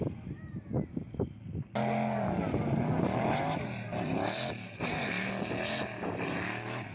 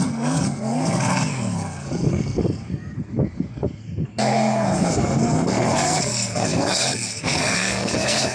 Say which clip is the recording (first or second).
first